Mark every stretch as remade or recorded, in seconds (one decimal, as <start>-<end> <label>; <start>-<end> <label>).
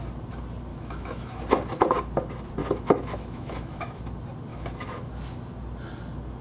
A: 0.0-0.7 recorded; 0.7-1.4 remade; 1.4-2.6 recorded; 2.6-4.0 remade; 4.0-4.5 recorded; 4.5-5.1 remade; 5.1-6.4 recorded